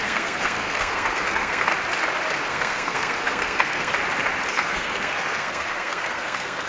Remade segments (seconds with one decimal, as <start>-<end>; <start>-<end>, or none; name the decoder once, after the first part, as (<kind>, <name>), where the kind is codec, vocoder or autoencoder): 0.0-1.7 (codec, SNAC); 2.5-3.9; 4.5-6.7